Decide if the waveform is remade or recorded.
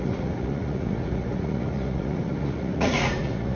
remade